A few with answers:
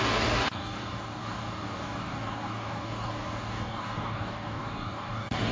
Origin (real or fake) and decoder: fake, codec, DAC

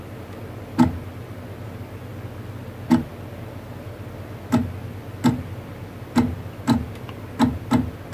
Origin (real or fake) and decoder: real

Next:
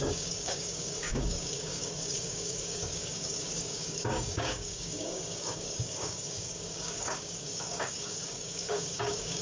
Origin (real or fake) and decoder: fake, codec, DAC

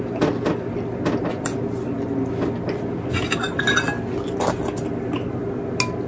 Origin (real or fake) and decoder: real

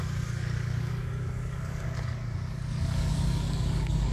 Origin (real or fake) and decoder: fake, codec, DAC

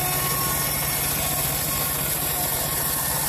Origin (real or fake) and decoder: real